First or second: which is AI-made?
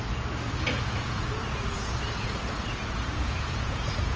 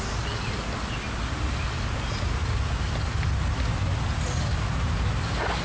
first